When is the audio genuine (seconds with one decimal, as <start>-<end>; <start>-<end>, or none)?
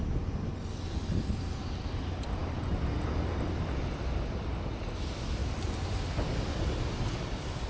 0.0-7.7